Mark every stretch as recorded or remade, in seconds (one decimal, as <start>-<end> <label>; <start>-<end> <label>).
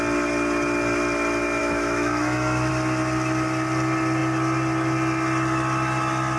0.0-1.6 recorded; 1.6-2.7 remade; 2.7-6.4 recorded